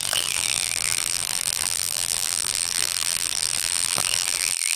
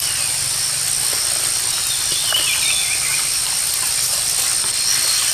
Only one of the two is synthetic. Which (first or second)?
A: first